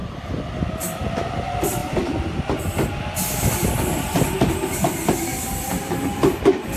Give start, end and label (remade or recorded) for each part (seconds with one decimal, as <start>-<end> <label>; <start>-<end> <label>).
0.0-1.8 recorded; 1.8-5.9 remade; 5.9-6.8 recorded

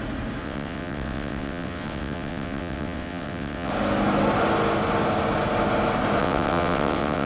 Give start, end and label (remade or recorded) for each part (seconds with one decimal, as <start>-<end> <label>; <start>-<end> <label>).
0.0-0.4 recorded; 0.4-3.7 remade; 3.7-6.2 recorded; 6.2-7.3 remade

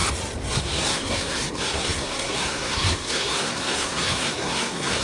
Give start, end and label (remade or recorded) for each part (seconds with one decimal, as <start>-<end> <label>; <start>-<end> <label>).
0.0-0.6 recorded; 0.6-5.0 remade